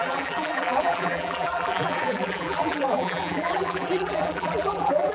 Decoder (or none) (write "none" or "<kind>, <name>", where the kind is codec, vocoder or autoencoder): vocoder, BigVGAN v2